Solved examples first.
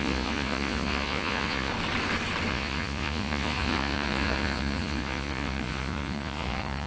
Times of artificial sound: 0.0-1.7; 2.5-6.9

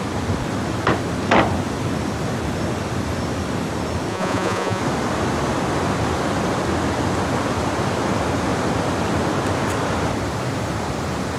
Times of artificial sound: 4.1-4.8

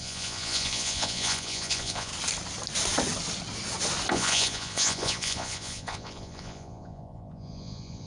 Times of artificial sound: 0.0-2.1; 4.1-8.1

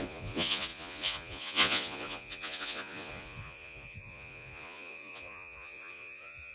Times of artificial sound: 0.0-6.5

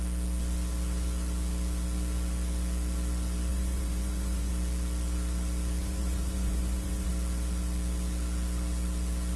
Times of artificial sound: 3.5-4.5; 5.8-7.1

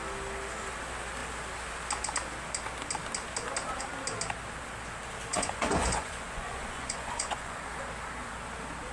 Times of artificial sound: 5.3-7.6